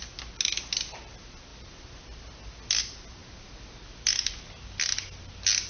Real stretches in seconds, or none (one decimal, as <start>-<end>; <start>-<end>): 0.0-5.7